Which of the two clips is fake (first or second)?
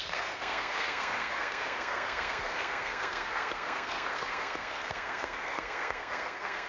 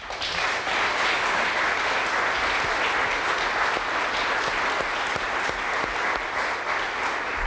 first